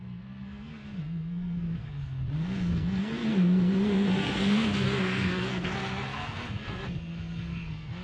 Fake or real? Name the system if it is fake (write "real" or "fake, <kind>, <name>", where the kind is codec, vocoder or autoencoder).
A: fake, codec, SNAC